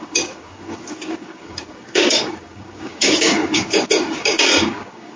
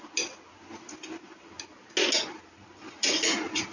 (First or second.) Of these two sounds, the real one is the second